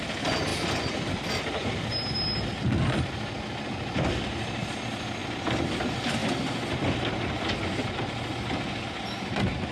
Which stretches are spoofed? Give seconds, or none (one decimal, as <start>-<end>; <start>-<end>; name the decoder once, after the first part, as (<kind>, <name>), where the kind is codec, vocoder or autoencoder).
5.2-5.7 (vocoder, BigVGAN v2)